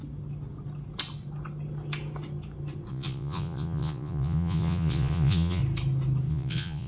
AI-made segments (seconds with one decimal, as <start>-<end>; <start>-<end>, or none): 2.9-5.6; 6.3-6.9